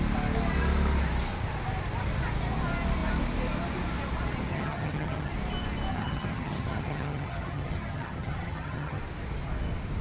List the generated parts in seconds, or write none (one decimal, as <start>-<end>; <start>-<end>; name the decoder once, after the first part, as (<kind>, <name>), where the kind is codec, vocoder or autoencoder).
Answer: 4.5-5.3 (vocoder, HiFi-GAN); 5.9-9.0